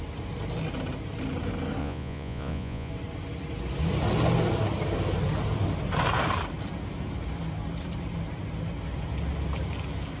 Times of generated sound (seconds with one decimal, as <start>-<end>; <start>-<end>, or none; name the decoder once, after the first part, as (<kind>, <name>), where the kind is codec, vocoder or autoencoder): 1.8-2.9 (vocoder, Vocos)

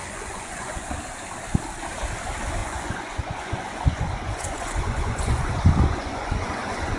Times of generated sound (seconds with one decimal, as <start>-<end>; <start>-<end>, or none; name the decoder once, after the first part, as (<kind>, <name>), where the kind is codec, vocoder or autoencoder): 0.0-0.9 (vocoder, Vocos); 2.6-7.0

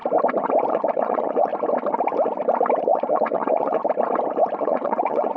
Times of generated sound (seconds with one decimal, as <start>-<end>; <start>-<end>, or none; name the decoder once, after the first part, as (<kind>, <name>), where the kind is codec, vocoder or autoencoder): 0.7-1.5 (vocoder, Vocos); 2.8-3.8; 4.6-5.4